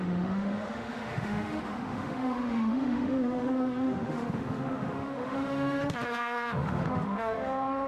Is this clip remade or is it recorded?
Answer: remade